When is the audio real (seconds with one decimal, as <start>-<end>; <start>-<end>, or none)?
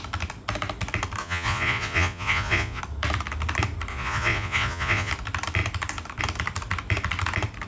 0.0-1.2; 2.8-3.9; 5.1-7.7